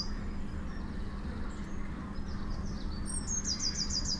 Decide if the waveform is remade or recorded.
recorded